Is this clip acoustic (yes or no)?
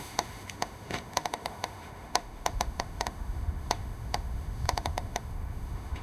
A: no